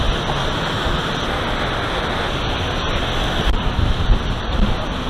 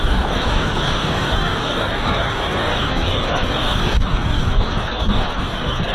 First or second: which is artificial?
second